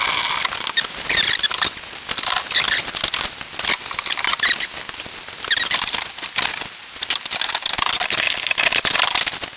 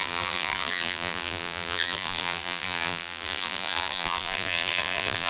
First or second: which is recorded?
first